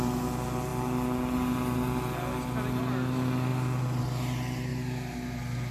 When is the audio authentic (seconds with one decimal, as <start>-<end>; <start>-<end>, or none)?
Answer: 0.0-5.7

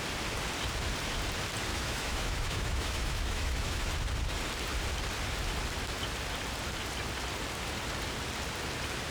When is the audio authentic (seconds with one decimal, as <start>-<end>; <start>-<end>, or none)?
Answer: 0.0-1.7; 3.9-9.1

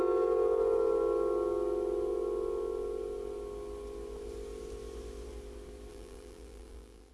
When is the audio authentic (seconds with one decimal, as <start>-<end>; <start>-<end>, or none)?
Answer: 0.0-5.9

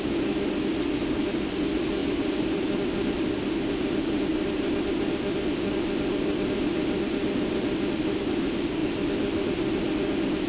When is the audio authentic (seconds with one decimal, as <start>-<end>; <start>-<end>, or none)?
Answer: 0.0-2.0; 2.5-10.5

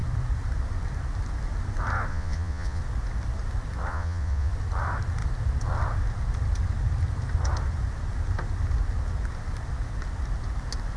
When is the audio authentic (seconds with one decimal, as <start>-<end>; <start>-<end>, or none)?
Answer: 0.0-2.1; 2.8-3.9; 4.5-11.0

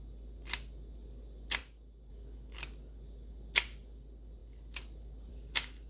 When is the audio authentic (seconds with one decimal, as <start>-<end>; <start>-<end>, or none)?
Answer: 0.0-5.9